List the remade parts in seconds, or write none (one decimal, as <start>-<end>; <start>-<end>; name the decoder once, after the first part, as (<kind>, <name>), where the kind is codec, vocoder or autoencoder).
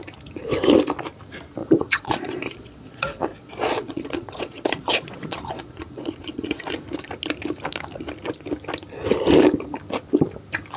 1.6-6.7 (vocoder, Vocos)